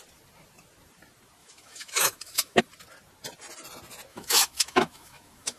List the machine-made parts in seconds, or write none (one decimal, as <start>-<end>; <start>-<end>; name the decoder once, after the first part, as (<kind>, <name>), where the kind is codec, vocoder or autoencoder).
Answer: 1.4-2.6 (autoencoder, DAC-VAE); 4.1-5.6